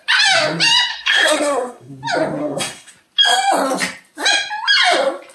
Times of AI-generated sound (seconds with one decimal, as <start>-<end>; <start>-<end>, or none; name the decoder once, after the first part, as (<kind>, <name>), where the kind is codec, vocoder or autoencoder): 0.9-1.9 (codec, SNAC); 2.4-2.9